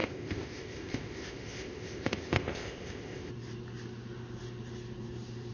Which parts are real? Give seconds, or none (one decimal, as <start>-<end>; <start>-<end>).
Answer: 3.3-5.5